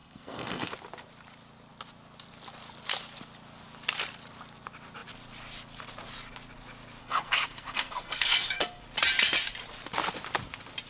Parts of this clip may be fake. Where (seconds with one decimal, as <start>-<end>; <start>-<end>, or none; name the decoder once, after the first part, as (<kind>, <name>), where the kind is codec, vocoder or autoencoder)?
0.0-0.7 (codec, SNAC); 7.0-8.8